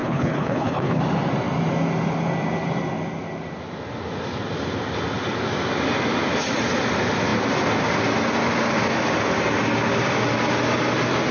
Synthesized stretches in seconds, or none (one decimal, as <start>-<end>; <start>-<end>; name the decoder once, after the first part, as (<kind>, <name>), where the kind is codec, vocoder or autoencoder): 0.0-1.0 (codec, HILCodec)